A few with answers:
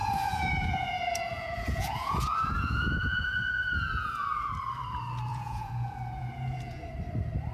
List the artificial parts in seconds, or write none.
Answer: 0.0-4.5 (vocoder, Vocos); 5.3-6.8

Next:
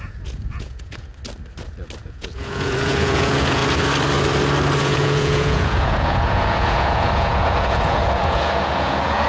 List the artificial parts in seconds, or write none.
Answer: 0.0-1.1 (vocoder, Vocos); 2.0-3.6; 4.8-9.3

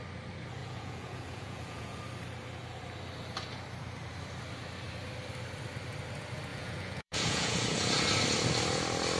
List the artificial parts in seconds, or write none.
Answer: 0.6-2.0 (vocoder, Vocos); 6.5-8.0

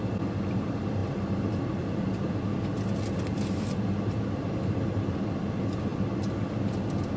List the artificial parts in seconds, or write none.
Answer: none